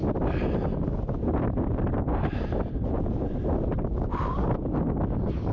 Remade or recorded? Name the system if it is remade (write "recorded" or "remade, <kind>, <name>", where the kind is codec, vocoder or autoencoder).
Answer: recorded